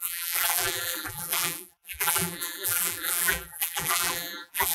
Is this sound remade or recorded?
remade